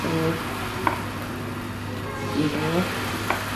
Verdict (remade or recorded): recorded